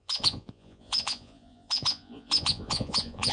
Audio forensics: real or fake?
fake